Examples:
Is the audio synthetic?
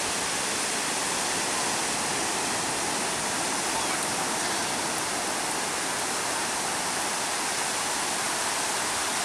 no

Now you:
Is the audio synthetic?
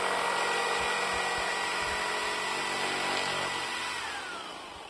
no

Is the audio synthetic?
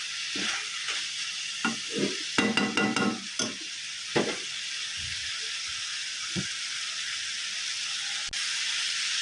no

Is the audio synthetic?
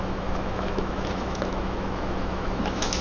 yes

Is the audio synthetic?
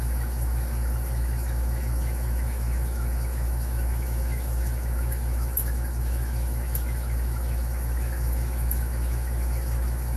yes